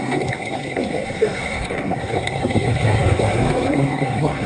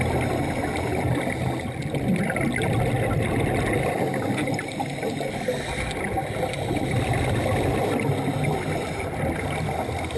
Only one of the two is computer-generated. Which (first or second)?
first